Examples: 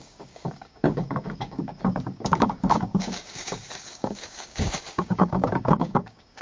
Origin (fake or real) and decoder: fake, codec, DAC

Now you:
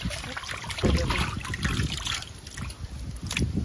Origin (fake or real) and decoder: real